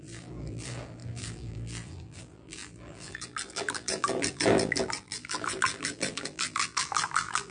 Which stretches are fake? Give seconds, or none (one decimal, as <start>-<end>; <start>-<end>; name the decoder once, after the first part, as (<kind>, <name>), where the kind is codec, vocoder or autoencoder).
0.0-7.5 (vocoder, BigVGAN v2)